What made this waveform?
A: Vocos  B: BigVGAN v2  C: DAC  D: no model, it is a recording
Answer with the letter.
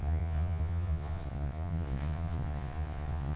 A